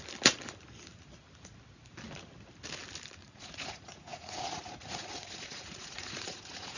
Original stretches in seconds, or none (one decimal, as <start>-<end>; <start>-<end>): 0.0-3.2